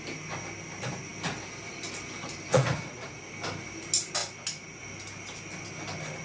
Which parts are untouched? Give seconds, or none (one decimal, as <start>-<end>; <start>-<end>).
0.0-2.5; 3.2-6.2